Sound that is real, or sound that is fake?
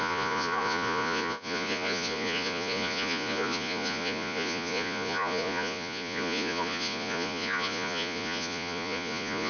fake